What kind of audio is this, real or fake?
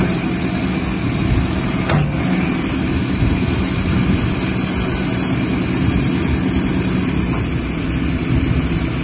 real